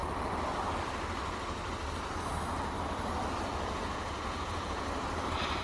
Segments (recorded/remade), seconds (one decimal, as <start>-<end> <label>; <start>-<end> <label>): 0.0-3.5 recorded; 3.5-4.8 remade; 4.8-5.6 recorded